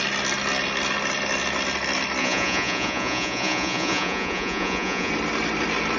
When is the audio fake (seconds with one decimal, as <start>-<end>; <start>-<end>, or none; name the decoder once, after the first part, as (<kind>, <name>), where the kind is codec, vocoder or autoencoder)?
2.2-5.1 (vocoder, Vocos)